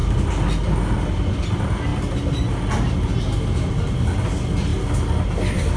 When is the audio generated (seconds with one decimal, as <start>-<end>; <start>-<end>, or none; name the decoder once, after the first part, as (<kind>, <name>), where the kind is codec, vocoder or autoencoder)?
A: none